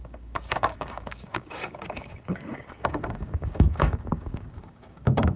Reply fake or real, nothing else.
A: fake